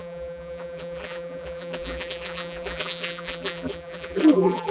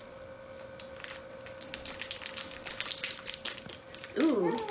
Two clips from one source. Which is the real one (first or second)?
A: second